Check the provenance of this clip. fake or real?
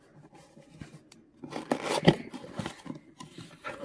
real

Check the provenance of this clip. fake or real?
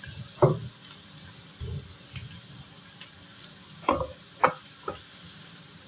real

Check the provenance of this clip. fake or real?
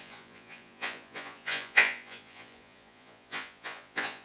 fake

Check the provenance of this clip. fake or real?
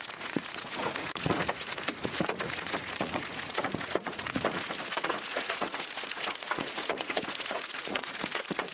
fake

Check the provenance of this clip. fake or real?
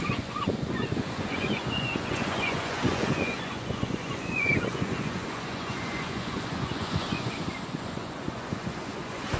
fake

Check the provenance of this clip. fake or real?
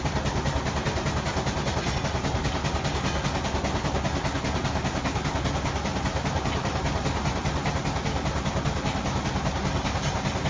real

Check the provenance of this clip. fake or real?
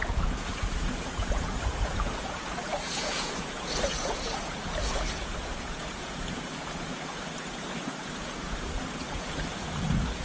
fake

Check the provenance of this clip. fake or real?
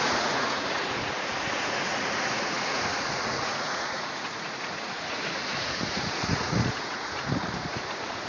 fake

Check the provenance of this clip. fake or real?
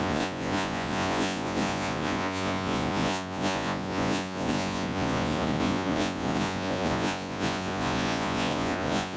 fake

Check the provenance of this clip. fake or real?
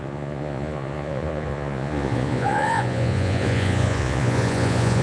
fake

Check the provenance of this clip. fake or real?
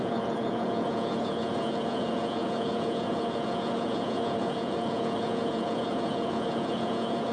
fake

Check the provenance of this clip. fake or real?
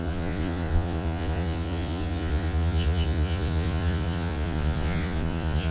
fake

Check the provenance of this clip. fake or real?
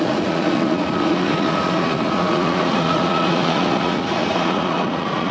fake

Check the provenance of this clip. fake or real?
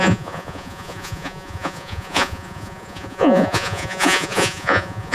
fake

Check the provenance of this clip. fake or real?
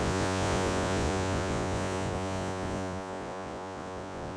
fake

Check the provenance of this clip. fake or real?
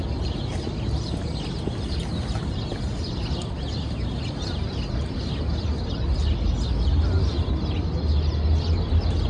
real